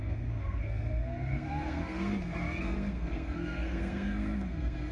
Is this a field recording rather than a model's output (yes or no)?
no